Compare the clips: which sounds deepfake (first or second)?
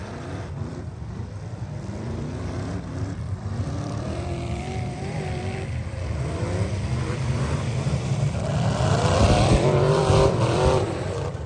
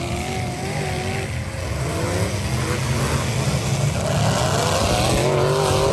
first